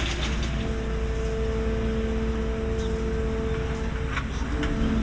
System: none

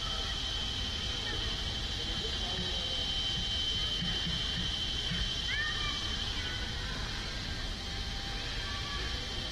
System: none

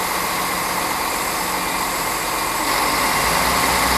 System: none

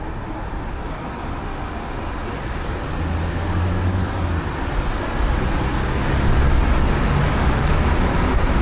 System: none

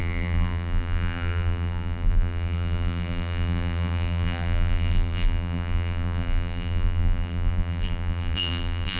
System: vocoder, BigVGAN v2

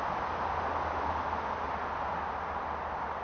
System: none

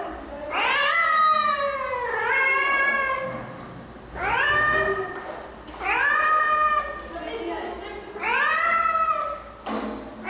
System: none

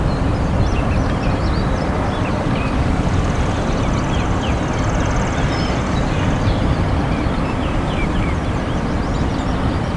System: vocoder, BigVGAN v2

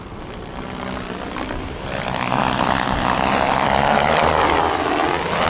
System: vocoder, BigVGAN v2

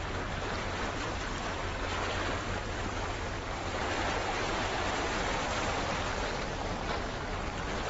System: vocoder, BigVGAN v2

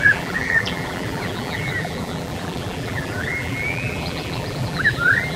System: vocoder, BigVGAN v2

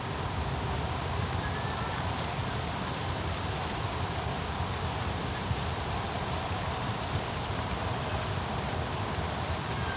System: vocoder, BigVGAN v2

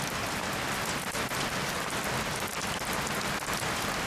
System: none